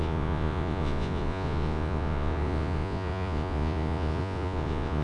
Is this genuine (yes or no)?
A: no